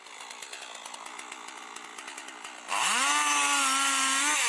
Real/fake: real